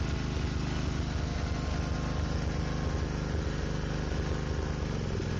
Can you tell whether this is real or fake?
real